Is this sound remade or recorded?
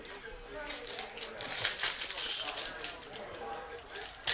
recorded